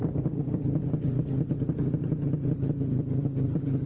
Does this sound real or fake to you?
fake